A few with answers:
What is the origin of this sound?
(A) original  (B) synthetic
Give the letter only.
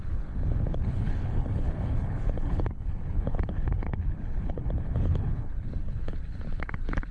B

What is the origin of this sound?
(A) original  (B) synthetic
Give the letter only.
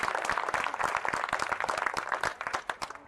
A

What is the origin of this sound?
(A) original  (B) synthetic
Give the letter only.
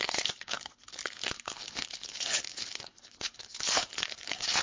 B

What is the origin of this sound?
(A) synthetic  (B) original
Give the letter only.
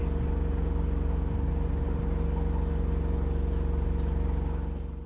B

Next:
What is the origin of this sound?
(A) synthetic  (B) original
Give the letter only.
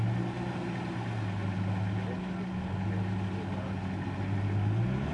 B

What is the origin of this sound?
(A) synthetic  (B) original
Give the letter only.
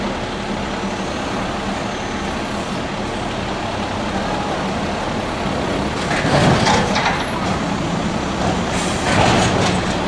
B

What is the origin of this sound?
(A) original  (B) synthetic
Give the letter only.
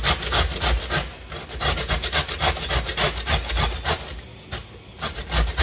A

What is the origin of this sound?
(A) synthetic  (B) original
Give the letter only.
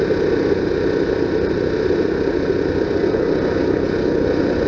B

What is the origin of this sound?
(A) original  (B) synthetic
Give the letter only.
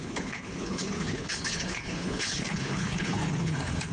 B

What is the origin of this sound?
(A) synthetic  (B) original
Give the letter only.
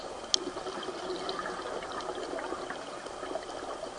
B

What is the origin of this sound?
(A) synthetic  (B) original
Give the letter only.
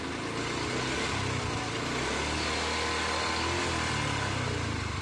B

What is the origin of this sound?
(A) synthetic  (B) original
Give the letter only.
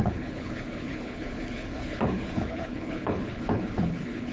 A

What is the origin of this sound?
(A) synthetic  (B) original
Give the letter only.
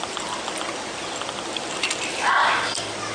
B